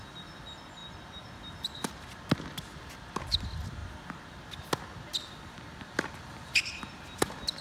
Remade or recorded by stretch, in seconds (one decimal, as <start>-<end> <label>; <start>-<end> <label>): 0.0-7.6 recorded